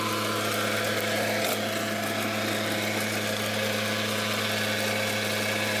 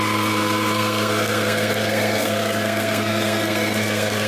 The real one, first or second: first